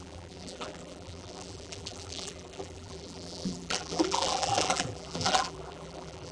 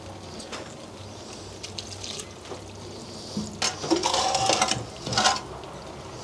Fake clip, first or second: first